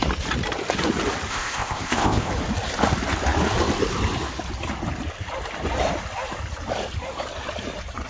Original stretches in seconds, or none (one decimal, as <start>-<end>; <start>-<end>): 0.0-1.3; 2.3-8.1